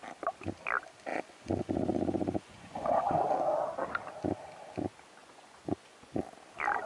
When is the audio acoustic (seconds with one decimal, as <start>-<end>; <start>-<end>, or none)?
0.0-1.1; 3.1-5.2; 6.2-6.9